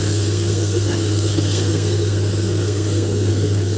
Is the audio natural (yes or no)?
no